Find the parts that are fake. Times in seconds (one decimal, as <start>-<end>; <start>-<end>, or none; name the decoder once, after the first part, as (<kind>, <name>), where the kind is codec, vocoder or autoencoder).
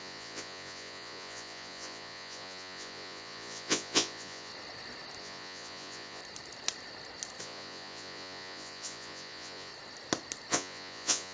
0.0-4.5 (vocoder, Vocos); 5.2-6.2; 7.4-9.7; 10.5-11.3